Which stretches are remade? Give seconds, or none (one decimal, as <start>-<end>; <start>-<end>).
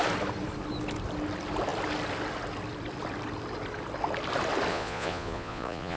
4.7-6.0